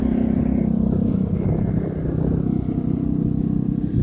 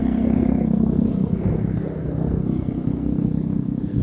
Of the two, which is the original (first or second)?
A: first